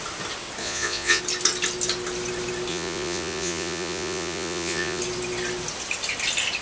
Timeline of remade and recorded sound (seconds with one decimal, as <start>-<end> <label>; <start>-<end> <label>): 0.0-0.6 recorded; 0.6-1.2 remade; 1.2-2.7 recorded; 2.7-5.0 remade; 5.0-6.6 recorded